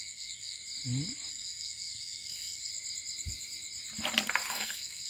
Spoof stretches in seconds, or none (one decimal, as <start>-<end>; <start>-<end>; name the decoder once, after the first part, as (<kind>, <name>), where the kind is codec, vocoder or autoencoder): 0.0-0.6 (codec, SNAC); 1.3-2.7; 4.5-5.1